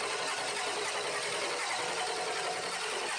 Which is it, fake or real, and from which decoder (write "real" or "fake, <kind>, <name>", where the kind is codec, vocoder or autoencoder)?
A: real